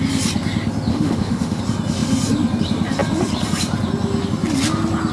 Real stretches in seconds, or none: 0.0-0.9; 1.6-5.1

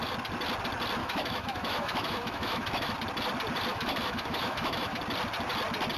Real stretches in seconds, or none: 0.0-1.0; 2.9-3.7; 5.0-6.0

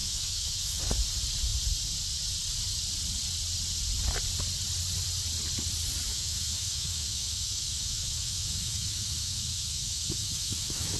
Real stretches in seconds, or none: 0.8-6.1